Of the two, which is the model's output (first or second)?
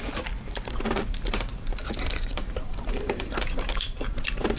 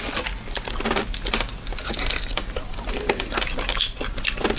first